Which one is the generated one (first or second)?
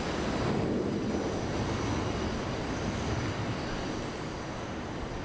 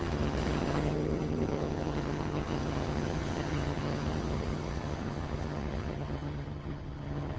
second